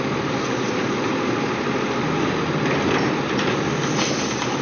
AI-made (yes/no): no